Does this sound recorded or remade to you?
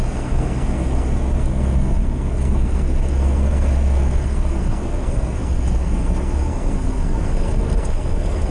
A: remade